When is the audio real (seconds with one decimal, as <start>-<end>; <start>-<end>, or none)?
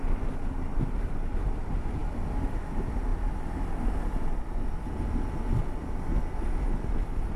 0.0-7.4